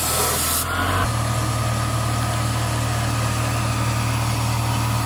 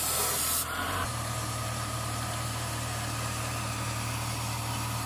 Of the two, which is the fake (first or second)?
second